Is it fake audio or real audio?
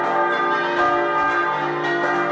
real